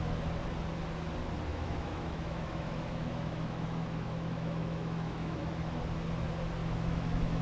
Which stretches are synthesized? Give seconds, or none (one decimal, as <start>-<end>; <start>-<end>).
1.5-5.4; 6.6-7.4